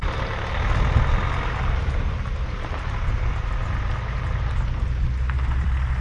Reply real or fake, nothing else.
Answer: real